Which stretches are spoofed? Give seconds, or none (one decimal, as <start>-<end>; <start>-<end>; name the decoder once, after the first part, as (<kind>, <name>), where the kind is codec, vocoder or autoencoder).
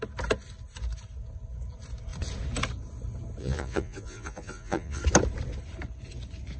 3.4-5.0 (vocoder, Vocos)